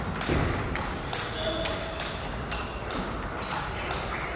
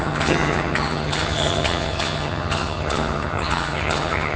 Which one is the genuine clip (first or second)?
first